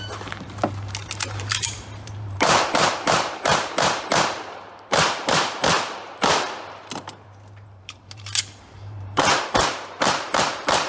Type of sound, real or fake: fake